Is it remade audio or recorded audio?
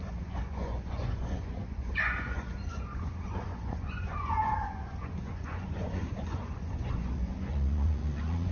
remade